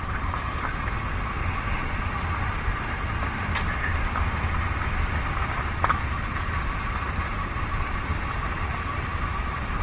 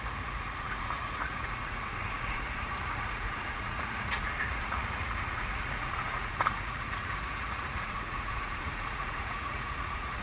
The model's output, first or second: second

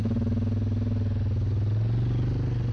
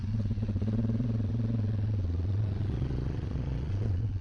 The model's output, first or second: second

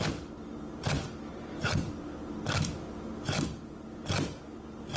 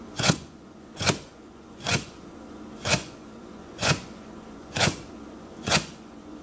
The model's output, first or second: second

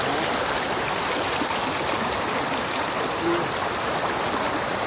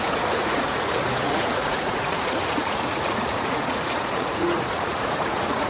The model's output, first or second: second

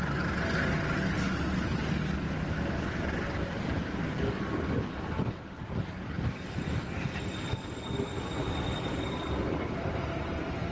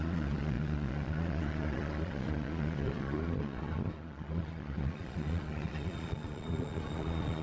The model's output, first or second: second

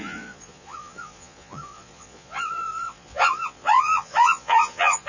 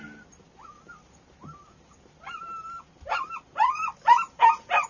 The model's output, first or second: first